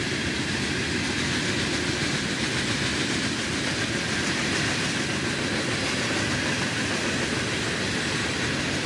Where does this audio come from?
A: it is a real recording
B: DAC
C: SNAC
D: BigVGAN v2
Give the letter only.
A